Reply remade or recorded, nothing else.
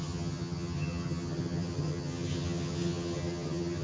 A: remade